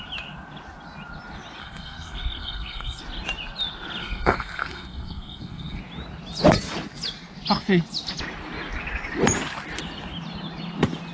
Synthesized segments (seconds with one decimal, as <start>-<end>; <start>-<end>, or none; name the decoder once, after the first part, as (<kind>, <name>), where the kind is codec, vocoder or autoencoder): 1.6-3.0 (codec, SNAC); 4.0-5.8